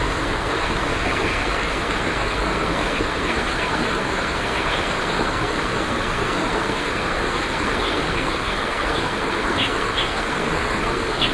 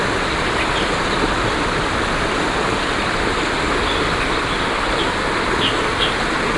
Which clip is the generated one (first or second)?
first